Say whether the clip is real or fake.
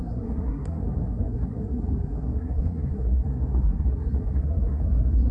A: fake